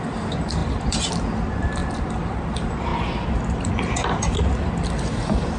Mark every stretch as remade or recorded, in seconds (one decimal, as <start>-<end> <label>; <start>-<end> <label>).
0.0-1.8 remade; 1.8-2.5 recorded; 2.5-5.6 remade